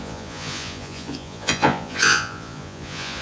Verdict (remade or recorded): remade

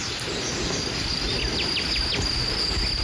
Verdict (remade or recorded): recorded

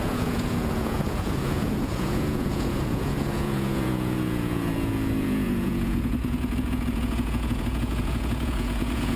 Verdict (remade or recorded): remade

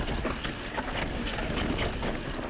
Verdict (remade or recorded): recorded